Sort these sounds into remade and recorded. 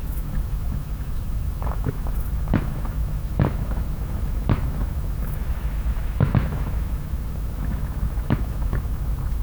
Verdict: remade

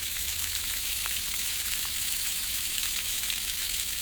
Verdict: remade